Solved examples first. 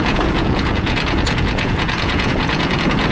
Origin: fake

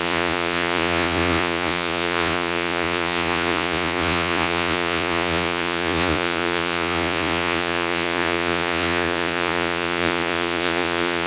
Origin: fake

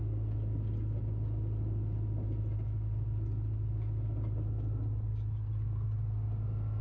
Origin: real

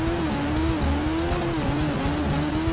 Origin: real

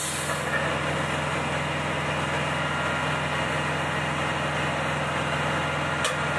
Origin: real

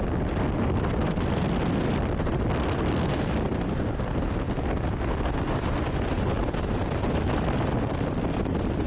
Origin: real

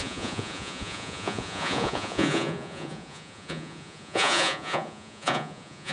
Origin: fake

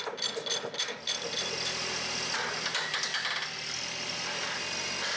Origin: real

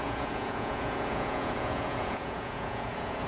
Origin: fake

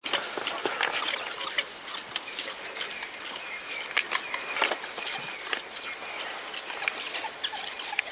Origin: real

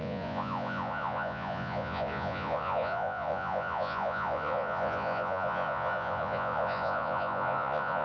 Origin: fake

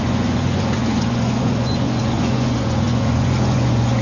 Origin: fake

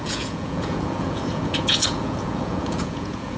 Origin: fake